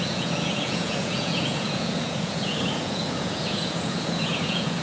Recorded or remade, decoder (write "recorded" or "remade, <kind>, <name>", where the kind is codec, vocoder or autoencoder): remade, vocoder, Vocos